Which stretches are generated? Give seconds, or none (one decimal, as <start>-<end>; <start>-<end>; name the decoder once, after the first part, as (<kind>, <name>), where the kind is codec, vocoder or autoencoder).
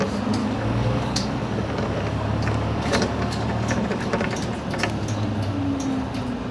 0.4-4.3 (codec, DAC)